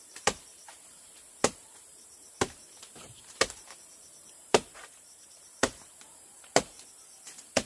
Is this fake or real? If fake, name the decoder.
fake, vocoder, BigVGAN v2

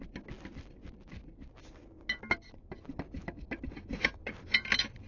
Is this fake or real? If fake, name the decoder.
real